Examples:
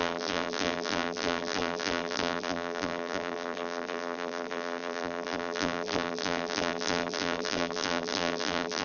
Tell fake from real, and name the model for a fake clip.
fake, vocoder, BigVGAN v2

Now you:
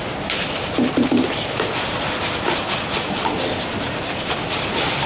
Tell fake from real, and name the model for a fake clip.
real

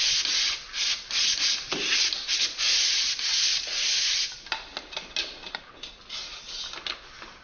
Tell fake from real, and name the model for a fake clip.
real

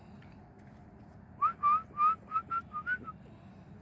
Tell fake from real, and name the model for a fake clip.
real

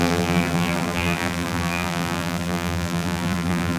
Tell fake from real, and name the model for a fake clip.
fake, vocoder, BigVGAN v2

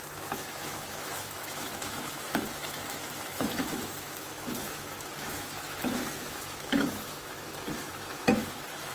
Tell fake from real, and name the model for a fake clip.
fake, autoencoder, DAC-VAE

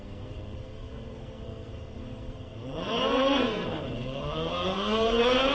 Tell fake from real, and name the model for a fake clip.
fake, codec, SNAC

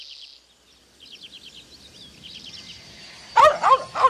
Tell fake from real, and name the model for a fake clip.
real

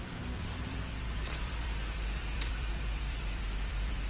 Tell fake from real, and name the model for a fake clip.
fake, vocoder, BigVGAN v2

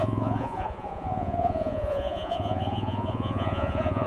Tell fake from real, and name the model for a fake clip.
fake, vocoder, Vocos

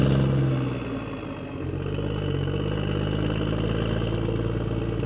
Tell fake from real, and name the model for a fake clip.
real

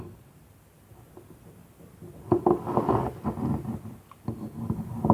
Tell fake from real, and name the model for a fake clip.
real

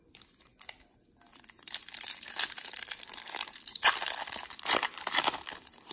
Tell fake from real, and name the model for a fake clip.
fake, vocoder, BigVGAN v2